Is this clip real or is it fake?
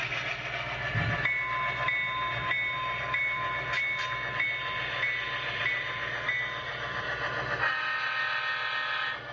real